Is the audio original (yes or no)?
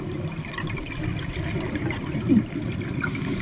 yes